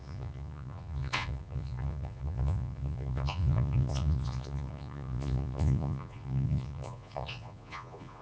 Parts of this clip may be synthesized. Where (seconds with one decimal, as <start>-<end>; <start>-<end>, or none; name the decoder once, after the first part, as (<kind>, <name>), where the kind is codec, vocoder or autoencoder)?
0.0-8.2 (vocoder, Vocos)